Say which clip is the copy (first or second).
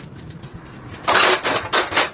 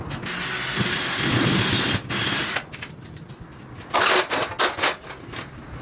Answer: first